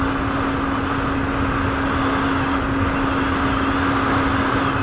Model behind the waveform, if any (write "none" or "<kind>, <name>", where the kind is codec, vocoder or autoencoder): none